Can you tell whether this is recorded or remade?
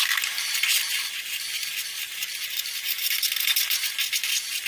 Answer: remade